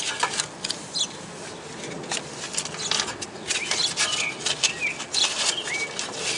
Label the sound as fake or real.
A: real